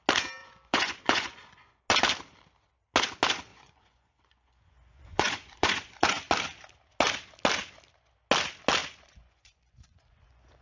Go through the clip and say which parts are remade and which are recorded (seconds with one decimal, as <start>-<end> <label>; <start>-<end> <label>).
0.0-0.4 recorded; 0.4-1.8 remade; 1.8-3.5 recorded; 3.5-6.3 remade; 6.3-8.8 recorded; 8.8-10.6 remade